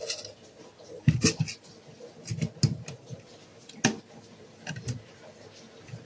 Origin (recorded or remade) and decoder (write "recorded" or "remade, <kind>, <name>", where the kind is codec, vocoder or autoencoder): recorded